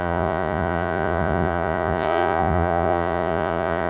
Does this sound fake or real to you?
fake